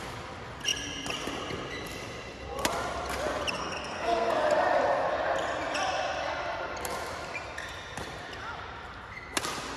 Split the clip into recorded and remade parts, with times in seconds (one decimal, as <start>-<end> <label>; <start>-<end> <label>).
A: 0.0-3.6 recorded; 3.6-4.3 remade; 4.3-9.8 recorded